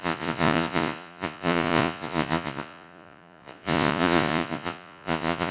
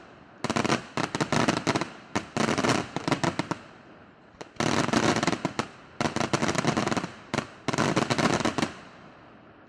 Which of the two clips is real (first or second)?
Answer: second